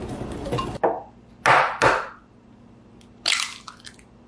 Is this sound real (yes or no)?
yes